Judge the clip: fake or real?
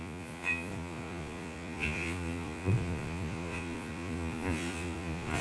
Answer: fake